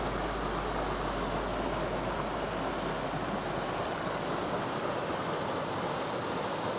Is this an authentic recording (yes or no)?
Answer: yes